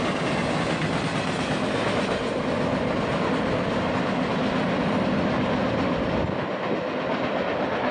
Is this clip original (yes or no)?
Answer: yes